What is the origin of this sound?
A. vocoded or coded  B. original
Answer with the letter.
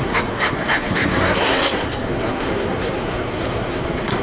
A